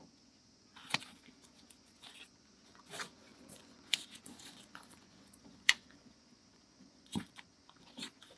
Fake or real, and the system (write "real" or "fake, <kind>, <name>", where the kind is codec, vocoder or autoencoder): fake, vocoder, Vocos